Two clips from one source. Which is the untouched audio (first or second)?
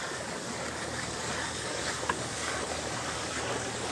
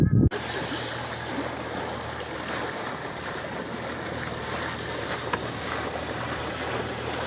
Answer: second